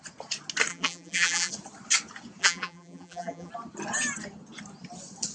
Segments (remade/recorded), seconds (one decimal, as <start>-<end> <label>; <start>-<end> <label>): 0.0-0.7 recorded; 0.7-1.5 remade; 1.5-2.4 recorded; 2.4-3.5 remade; 3.5-5.3 recorded